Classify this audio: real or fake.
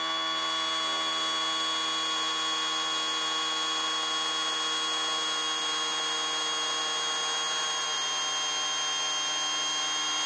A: real